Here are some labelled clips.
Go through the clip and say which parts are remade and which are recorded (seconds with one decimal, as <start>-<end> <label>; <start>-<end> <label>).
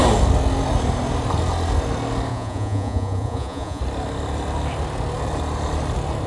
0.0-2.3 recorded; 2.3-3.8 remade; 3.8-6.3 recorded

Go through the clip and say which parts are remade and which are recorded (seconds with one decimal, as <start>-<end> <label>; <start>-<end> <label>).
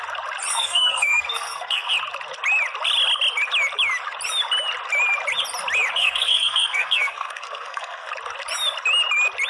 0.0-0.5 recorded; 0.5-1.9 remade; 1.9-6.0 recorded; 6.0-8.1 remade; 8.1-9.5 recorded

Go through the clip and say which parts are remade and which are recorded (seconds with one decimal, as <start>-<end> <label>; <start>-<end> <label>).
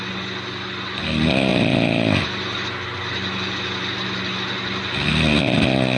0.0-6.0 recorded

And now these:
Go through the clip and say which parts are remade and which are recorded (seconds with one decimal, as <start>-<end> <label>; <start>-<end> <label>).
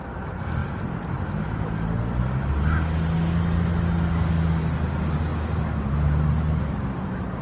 0.0-7.4 recorded